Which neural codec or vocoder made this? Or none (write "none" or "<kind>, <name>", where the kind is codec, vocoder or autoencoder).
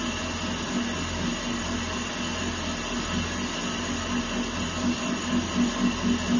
none